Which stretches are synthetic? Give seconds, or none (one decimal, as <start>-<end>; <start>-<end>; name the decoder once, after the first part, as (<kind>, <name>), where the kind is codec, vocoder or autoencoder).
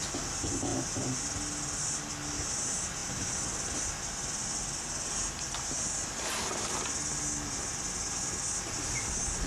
none